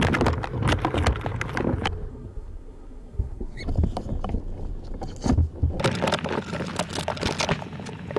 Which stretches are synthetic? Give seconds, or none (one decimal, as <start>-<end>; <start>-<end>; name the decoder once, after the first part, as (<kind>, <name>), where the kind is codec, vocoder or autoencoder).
2.1-3.6 (codec, SNAC)